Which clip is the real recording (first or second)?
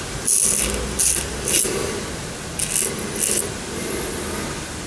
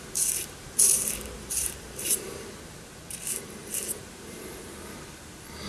first